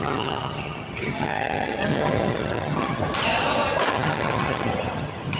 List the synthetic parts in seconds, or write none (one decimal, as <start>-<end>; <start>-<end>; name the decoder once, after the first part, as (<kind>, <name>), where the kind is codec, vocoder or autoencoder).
0.0-3.0 (vocoder, HiFi-GAN); 3.9-5.4